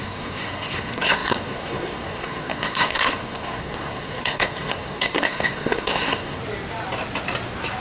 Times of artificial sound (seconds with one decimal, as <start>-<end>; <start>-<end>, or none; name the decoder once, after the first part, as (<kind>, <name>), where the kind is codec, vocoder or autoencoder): 0.0-6.4 (codec, SNAC)